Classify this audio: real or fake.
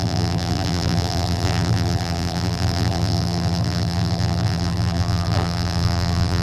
fake